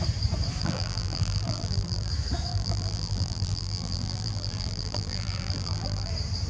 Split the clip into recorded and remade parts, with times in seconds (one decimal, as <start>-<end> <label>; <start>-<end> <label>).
0.0-0.6 recorded; 0.6-2.1 remade; 2.1-2.5 recorded; 2.5-6.1 remade; 6.1-6.5 recorded

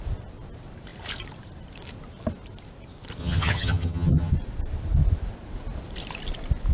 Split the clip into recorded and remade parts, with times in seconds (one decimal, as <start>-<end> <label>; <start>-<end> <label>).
0.0-3.2 recorded; 3.2-4.3 remade; 4.3-6.7 recorded

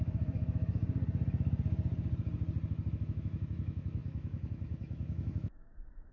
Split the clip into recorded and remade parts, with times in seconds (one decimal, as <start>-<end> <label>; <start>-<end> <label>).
0.0-0.8 remade; 0.8-2.9 recorded; 2.9-6.1 remade

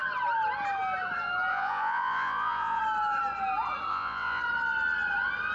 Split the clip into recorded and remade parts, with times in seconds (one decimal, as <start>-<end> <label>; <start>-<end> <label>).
0.0-1.5 recorded; 1.5-2.8 remade; 2.8-3.9 recorded; 3.9-4.4 remade; 4.4-5.5 recorded

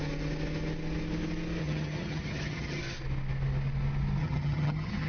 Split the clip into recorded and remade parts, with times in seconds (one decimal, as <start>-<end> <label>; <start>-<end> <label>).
0.0-1.6 recorded; 1.6-2.8 remade; 2.8-4.2 recorded; 4.2-5.1 remade

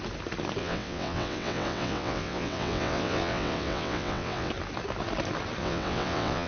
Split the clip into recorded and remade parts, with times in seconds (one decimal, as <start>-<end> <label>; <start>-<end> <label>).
0.0-0.6 recorded; 0.6-4.5 remade; 4.5-5.6 recorded; 5.6-6.5 remade

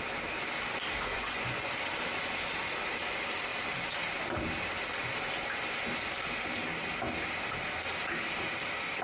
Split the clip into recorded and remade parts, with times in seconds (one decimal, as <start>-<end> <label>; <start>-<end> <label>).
0.0-1.1 recorded; 1.1-1.7 remade; 1.7-9.0 recorded

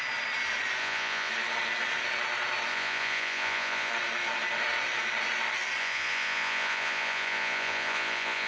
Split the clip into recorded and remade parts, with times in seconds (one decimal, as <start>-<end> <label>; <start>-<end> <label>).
0.0-0.8 recorded; 0.8-1.3 remade; 1.3-2.7 recorded; 2.7-3.9 remade; 3.9-5.8 recorded; 5.8-8.5 remade